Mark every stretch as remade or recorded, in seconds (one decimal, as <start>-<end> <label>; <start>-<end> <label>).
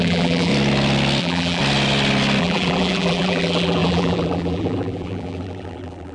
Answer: 0.0-0.5 remade; 0.5-1.2 recorded; 1.2-1.6 remade; 1.6-2.4 recorded; 2.4-6.1 remade